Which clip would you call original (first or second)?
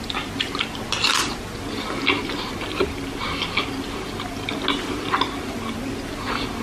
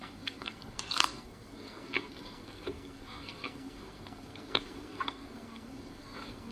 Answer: first